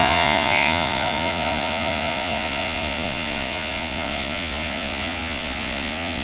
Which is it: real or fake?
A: fake